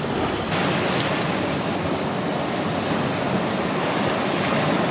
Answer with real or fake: real